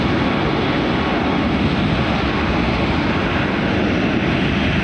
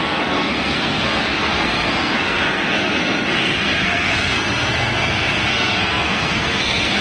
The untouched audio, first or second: first